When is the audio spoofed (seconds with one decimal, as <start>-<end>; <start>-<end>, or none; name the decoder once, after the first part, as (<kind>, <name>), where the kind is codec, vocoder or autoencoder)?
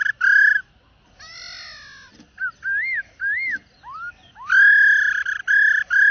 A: none